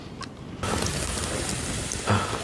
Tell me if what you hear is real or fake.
real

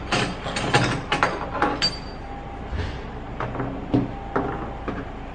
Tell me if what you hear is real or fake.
real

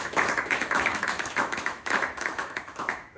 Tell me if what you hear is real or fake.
fake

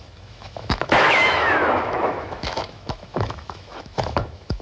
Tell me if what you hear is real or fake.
fake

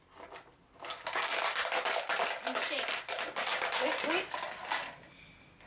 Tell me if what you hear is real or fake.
real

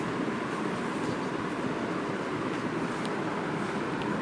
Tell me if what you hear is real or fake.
real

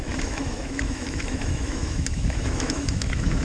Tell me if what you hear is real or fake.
fake